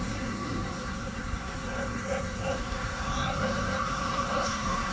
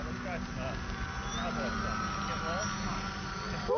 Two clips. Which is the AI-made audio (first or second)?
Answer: first